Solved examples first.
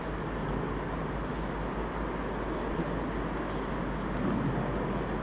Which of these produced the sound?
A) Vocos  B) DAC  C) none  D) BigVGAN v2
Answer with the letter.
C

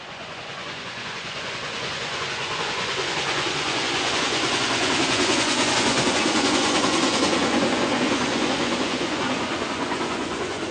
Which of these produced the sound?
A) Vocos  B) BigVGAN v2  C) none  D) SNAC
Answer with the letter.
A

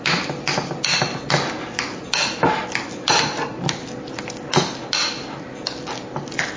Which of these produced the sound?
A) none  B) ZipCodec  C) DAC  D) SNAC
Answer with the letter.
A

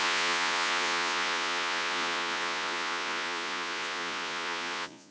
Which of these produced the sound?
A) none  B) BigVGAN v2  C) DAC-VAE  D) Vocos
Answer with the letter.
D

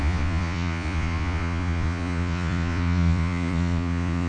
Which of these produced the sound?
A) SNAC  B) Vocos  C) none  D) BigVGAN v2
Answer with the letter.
B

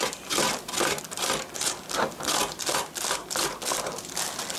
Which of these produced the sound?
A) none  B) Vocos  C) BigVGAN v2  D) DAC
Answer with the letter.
A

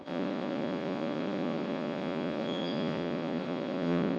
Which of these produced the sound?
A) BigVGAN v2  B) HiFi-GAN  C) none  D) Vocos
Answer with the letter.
D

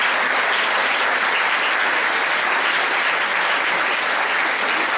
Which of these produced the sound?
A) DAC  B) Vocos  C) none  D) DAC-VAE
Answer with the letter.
C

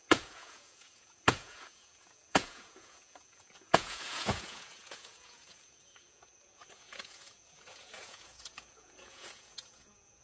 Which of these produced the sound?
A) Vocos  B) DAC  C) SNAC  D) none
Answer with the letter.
A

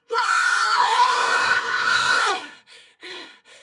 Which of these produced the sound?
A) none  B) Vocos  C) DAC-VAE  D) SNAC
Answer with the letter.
D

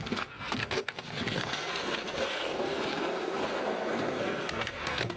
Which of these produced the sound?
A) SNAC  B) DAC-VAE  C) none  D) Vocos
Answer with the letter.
A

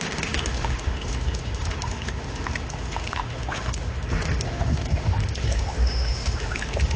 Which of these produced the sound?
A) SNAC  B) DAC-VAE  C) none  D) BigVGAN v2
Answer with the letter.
B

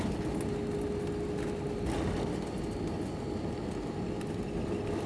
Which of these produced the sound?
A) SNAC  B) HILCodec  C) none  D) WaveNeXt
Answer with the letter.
C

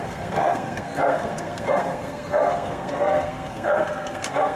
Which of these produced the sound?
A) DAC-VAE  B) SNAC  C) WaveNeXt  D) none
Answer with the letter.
B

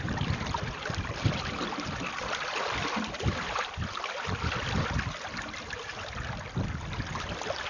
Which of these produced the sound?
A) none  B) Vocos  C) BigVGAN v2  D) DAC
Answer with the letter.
A